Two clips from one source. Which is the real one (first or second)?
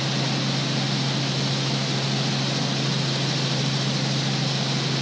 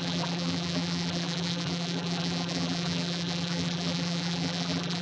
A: first